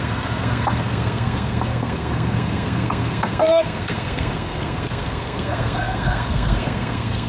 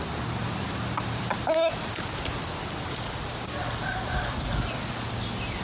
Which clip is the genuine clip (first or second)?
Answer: second